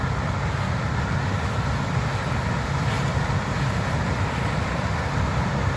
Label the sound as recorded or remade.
recorded